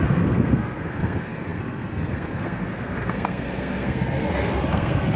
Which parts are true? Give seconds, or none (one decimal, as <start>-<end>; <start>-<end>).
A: none